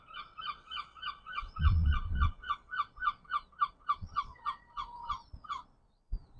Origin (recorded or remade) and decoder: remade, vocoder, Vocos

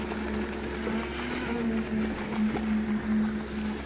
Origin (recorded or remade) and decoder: recorded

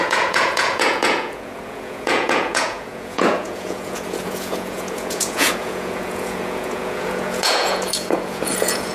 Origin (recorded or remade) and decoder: remade, vocoder, Vocos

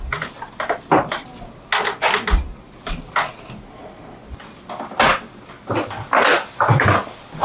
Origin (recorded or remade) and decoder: recorded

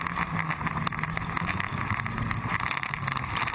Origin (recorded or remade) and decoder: recorded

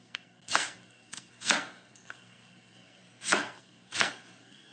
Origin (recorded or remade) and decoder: remade, codec, SNAC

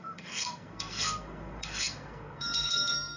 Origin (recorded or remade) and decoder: remade, codec, SNAC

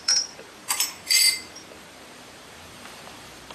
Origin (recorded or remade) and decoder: remade, vocoder, BigVGAN v2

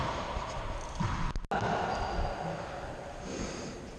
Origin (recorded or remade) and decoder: recorded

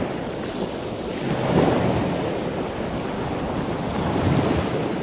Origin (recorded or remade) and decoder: recorded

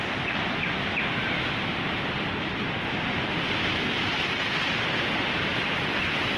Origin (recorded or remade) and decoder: recorded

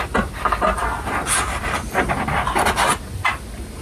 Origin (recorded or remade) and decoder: recorded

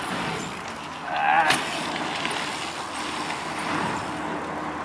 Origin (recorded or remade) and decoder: recorded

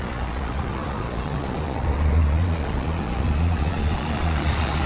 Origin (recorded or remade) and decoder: remade, vocoder, Vocos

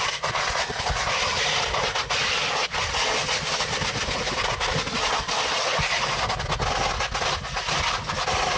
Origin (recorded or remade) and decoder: recorded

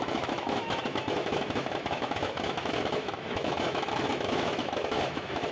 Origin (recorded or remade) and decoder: remade, autoencoder, DAC-VAE